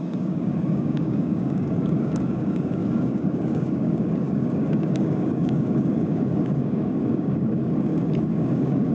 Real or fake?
fake